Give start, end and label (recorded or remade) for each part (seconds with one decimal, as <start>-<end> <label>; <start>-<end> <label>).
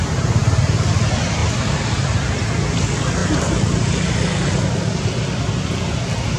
0.0-0.4 recorded; 0.4-1.0 remade; 1.0-1.4 recorded; 1.4-2.0 remade; 2.0-3.2 recorded; 3.2-4.1 remade; 4.1-6.4 recorded